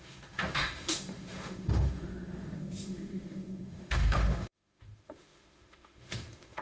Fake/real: fake